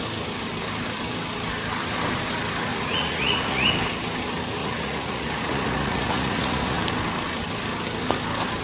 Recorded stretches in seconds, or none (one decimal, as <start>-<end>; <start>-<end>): 0.0-2.7; 3.7-4.6; 6.8-8.6